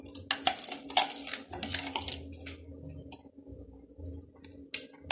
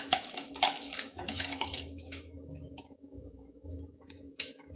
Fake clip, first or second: second